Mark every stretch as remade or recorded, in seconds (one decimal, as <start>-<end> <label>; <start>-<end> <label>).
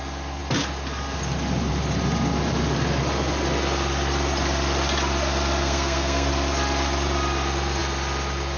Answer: 0.0-5.6 recorded; 5.6-6.3 remade; 6.3-8.6 recorded